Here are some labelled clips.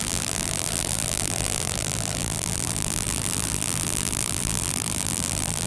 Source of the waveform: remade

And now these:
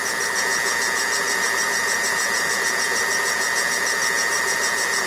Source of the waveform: remade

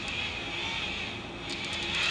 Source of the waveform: recorded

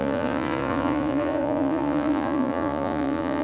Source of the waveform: remade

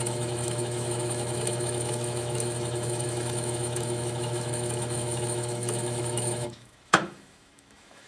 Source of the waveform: remade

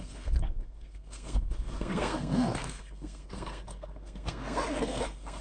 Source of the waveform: remade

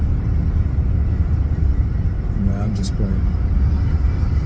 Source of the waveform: remade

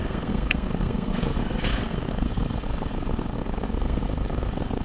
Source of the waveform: remade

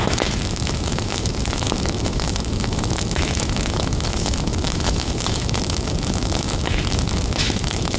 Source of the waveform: remade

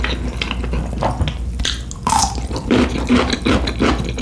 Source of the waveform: recorded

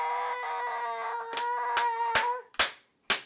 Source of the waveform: recorded